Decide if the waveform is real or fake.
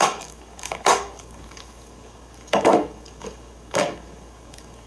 fake